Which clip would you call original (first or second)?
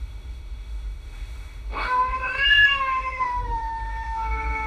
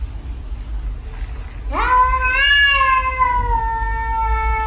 second